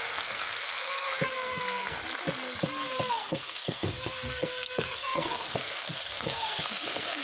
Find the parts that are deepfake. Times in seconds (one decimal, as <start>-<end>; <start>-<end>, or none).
0.0-2.0; 3.1-7.2